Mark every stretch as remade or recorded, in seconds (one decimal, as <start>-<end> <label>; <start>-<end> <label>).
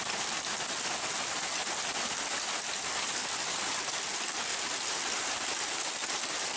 0.0-3.4 recorded; 3.4-4.0 remade; 4.0-4.5 recorded; 4.5-5.9 remade; 5.9-6.6 recorded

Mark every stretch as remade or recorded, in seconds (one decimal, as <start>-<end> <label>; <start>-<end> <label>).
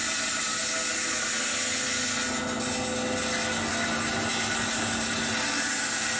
0.0-6.2 recorded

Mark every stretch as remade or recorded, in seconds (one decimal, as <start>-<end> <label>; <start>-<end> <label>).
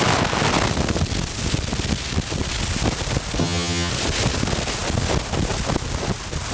0.0-3.4 recorded; 3.4-3.9 remade; 3.9-6.5 recorded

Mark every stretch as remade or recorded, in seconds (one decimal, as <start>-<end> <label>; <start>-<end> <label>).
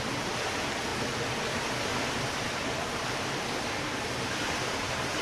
0.0-5.2 recorded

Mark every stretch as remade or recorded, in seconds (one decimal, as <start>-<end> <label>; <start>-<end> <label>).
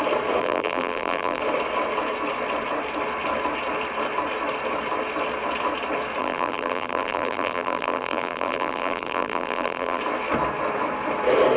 0.0-0.4 recorded; 0.4-1.4 remade; 1.4-6.2 recorded; 6.2-10.0 remade; 10.0-11.6 recorded